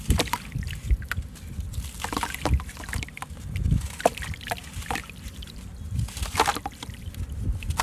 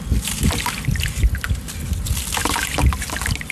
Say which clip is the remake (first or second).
first